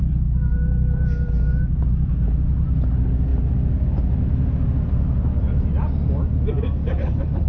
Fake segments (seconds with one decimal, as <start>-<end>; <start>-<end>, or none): 6.8-7.5